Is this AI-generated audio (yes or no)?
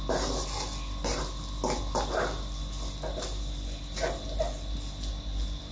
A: no